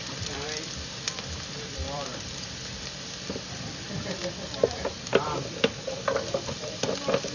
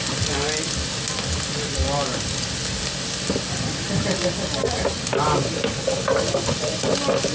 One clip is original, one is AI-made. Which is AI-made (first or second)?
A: first